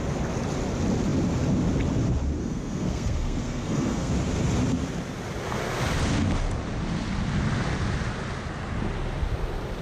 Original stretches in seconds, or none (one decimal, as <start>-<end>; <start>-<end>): 0.0-2.4; 4.1-9.8